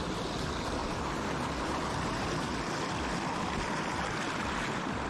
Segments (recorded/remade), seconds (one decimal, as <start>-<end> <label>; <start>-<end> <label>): 0.0-5.1 recorded